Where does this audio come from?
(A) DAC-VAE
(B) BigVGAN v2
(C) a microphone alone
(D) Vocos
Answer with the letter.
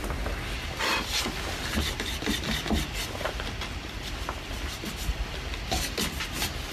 C